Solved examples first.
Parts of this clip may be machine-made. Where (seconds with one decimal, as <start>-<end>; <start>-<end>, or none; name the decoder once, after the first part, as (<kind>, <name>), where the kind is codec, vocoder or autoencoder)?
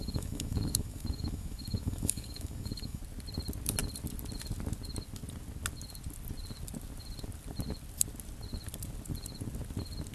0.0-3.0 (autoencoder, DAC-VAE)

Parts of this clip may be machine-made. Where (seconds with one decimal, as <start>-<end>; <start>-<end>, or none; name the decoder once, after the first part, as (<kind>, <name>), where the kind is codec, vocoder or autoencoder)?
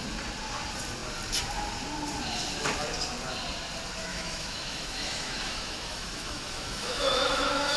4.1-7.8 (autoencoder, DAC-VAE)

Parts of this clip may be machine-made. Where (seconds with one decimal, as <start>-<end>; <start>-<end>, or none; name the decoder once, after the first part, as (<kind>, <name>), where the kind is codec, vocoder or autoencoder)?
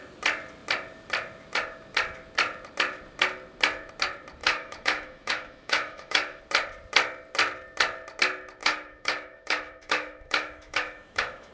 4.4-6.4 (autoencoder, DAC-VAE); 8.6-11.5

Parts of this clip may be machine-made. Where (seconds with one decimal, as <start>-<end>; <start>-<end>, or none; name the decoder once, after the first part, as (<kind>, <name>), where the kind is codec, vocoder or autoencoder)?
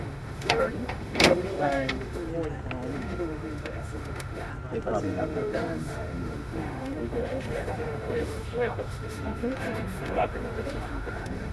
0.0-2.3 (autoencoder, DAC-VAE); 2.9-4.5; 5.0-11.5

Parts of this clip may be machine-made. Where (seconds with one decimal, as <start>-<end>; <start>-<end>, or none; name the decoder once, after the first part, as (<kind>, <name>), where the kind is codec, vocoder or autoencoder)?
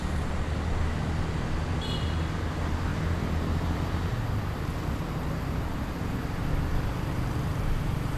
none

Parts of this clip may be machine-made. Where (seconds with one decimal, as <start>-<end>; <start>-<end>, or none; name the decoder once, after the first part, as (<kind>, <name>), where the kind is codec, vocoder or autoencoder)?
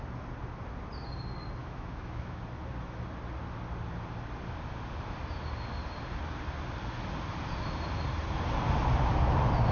1.6-2.4 (autoencoder, DAC-VAE)